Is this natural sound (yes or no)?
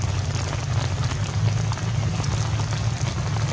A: yes